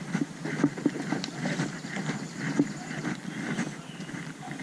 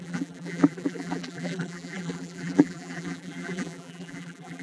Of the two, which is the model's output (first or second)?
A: second